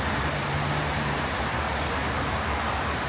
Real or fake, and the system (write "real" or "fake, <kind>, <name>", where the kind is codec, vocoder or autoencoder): real